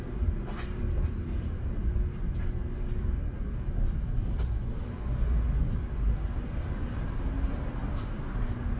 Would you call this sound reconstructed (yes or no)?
no